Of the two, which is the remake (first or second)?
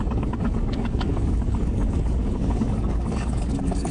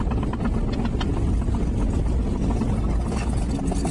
first